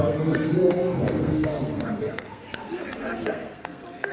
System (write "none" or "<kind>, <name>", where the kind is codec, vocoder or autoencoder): codec, SNAC